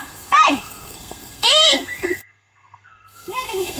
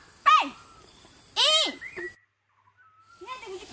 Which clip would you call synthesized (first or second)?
first